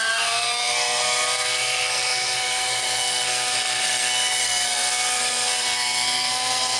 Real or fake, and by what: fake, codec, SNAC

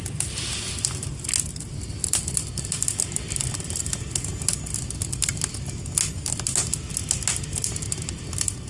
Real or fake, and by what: real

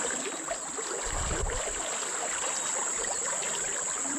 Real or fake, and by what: real